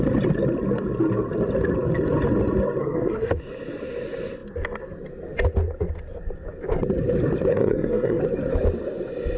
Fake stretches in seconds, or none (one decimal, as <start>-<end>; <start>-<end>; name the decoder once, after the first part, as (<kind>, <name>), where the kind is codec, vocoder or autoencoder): 2.8-3.4 (codec, SNAC); 7.5-8.2